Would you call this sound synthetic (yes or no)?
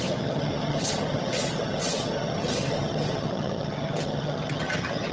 yes